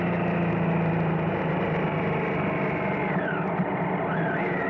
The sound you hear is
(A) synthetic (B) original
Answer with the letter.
B